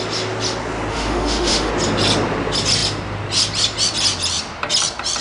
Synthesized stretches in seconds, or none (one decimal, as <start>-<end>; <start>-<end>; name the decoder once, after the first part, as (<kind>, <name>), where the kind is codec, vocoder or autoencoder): 0.9-1.7 (autoencoder, DAC-VAE)